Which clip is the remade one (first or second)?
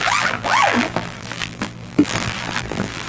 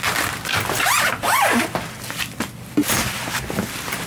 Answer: first